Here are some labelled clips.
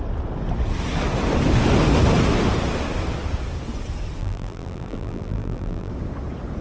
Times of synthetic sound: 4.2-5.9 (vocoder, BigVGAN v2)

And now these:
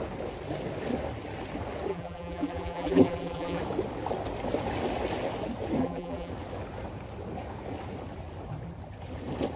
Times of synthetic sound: 1.9-3.6 (vocoder, BigVGAN v2); 5.8-6.3

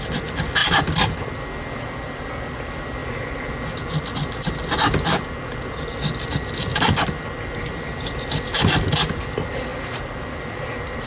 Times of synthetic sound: 0.0-3.0 (vocoder, BigVGAN v2); 3.7-6.7; 7.6-11.1